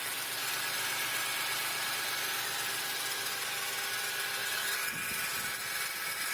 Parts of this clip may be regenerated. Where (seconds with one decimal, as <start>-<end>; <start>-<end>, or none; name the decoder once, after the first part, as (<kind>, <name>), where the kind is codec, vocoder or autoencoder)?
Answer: none